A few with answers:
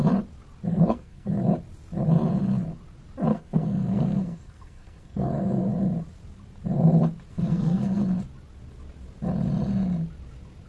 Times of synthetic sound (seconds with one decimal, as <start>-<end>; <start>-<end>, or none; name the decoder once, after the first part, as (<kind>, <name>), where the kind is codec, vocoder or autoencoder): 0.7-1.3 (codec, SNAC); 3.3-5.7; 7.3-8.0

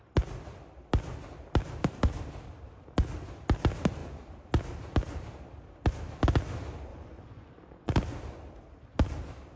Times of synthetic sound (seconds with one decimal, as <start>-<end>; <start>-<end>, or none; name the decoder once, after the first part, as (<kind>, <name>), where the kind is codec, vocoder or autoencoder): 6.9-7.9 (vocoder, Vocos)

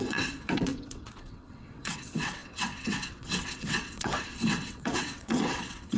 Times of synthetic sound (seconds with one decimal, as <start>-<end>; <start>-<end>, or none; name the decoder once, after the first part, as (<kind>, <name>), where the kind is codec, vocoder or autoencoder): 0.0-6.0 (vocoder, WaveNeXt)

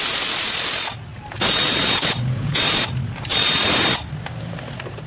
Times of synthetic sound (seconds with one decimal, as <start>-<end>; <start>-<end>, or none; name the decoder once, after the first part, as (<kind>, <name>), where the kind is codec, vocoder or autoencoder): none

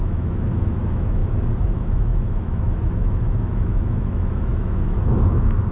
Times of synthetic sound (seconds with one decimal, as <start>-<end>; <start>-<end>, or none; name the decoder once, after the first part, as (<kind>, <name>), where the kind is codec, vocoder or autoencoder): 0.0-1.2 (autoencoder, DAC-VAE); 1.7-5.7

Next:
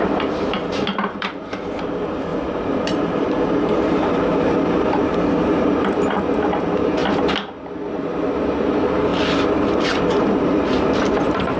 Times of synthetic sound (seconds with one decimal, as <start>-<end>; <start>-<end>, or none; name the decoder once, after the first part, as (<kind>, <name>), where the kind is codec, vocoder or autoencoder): 0.0-7.0 (vocoder, BigVGAN v2); 8.7-9.1; 9.8-11.6

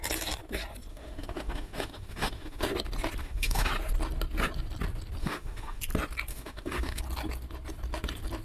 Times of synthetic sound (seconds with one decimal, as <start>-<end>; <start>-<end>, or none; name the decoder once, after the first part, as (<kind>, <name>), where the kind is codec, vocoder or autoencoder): 0.9-2.6 (autoencoder, DAC-VAE); 3.2-3.7; 5.2-5.8; 6.3-7.0